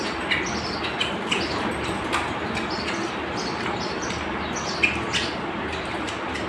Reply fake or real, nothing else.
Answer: real